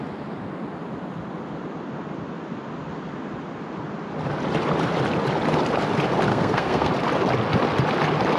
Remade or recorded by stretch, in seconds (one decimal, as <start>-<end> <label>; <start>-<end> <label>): 0.0-6.3 recorded; 6.3-6.9 remade; 6.9-8.4 recorded

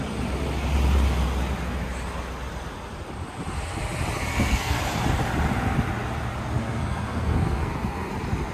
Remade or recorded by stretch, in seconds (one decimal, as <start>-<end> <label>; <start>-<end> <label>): 0.0-4.3 recorded; 4.3-4.8 remade; 4.8-6.6 recorded; 6.6-8.1 remade; 8.1-8.5 recorded